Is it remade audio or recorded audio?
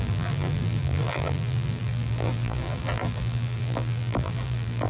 remade